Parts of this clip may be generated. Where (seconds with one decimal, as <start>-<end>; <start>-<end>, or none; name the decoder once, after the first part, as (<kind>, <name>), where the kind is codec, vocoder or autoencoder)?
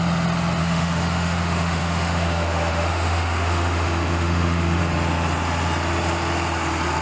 0.6-4.8 (autoencoder, DAC-VAE)